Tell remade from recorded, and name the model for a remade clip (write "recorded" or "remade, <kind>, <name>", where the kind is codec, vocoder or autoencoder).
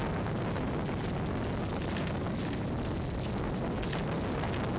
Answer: recorded